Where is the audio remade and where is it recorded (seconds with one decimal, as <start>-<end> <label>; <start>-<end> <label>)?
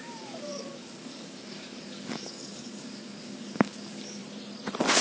0.0-4.2 remade; 4.2-5.0 recorded